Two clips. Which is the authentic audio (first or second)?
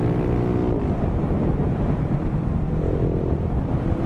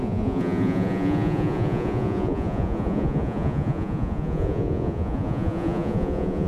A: first